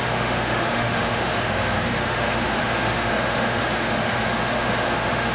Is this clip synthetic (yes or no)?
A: yes